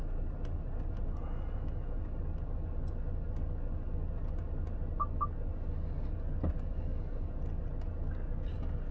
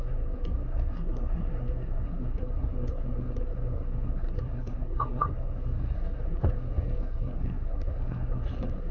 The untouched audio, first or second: first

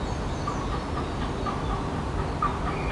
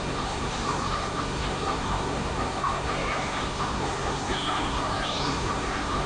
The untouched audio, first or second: first